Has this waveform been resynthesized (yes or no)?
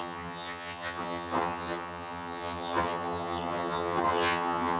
yes